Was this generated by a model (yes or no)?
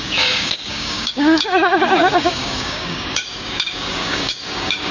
yes